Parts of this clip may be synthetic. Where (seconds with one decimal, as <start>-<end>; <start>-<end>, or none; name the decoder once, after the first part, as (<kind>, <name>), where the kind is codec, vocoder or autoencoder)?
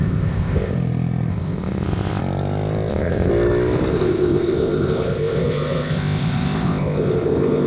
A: 0.0-0.7 (codec, ZipCodec); 1.3-2.2; 2.9-3.3; 3.9-7.7